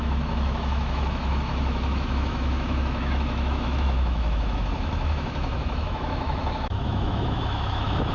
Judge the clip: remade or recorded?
remade